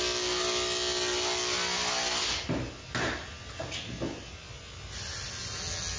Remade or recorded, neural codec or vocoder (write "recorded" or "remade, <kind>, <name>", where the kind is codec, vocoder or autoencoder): recorded